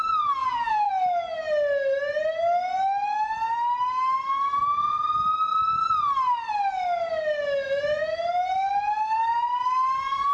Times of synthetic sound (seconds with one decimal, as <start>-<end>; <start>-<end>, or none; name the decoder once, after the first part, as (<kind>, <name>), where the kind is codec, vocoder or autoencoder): 0.4-0.9 (vocoder, BigVGAN v2)